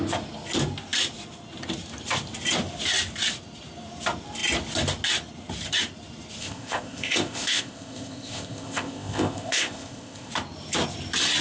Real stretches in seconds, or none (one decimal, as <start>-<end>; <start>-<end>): 0.0-6.4; 10.3-11.4